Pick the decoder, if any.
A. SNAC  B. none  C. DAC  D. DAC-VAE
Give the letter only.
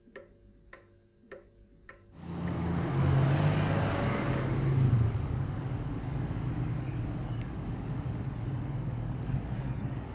C